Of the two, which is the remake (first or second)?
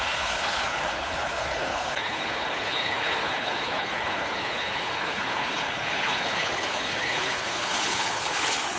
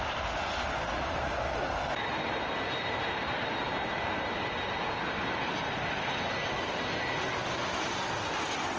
first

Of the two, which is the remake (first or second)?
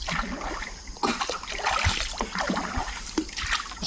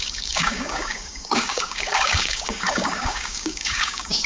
second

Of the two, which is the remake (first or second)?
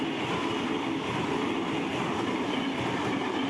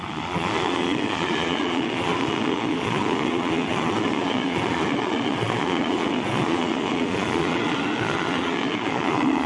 second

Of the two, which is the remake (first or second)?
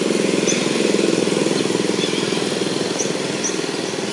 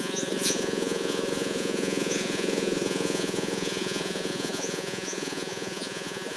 second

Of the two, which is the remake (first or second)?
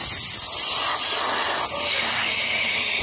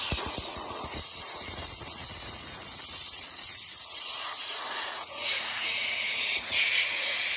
second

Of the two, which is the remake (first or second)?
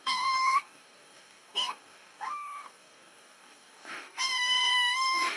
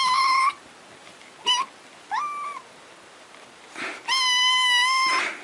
first